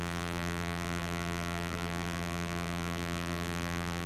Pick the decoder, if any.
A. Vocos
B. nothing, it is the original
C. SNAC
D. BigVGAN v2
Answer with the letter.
D